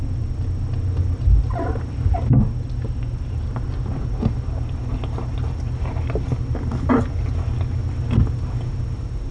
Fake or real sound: real